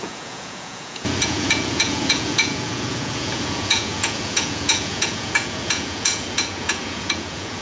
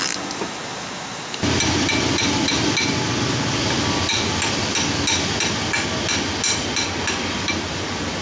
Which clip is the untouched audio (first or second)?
second